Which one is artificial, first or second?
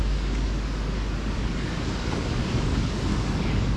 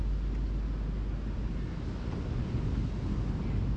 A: first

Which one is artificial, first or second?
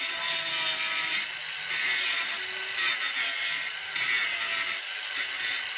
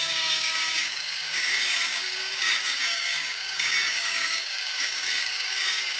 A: second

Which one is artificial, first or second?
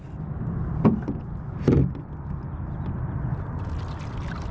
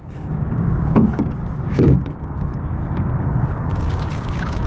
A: second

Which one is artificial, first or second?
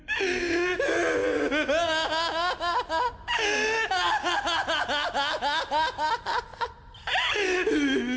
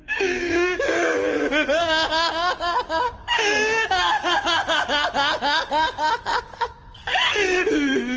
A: second